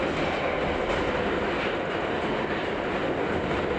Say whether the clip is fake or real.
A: real